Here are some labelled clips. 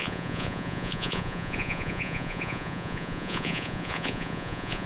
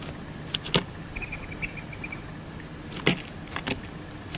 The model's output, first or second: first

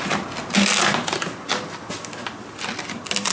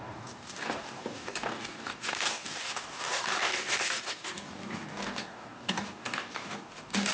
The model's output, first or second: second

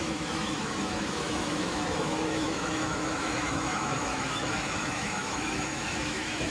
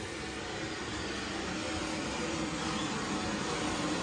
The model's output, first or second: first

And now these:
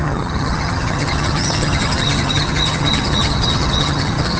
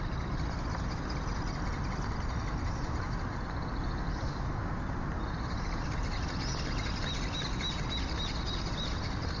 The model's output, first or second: first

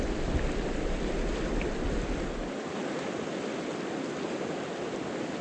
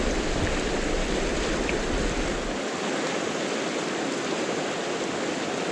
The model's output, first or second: second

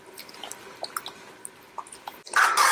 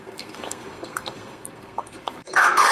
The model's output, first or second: second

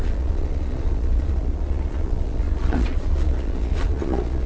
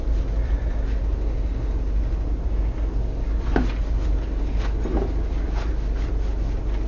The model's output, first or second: first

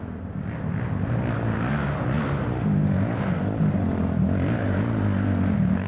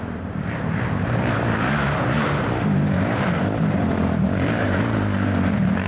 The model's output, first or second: second